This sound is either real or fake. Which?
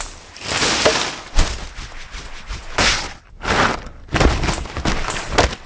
real